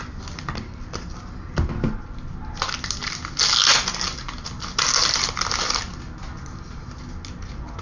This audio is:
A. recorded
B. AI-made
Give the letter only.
A